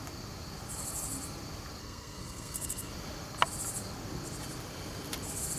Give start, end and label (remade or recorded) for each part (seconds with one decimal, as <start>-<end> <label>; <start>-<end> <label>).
0.0-1.8 recorded; 1.8-2.9 remade; 2.9-5.6 recorded